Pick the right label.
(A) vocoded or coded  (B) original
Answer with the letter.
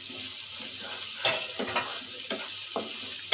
B